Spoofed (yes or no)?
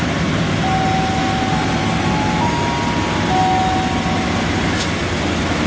no